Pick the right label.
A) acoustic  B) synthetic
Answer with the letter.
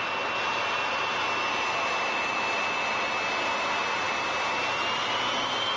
A